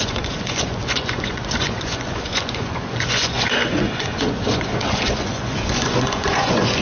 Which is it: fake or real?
fake